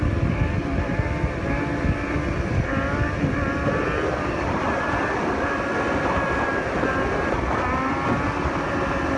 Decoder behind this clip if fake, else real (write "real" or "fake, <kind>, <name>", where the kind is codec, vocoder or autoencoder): fake, vocoder, BigVGAN v2